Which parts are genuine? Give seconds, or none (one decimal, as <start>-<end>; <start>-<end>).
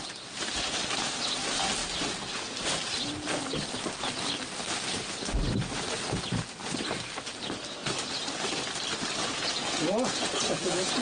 0.0-9.2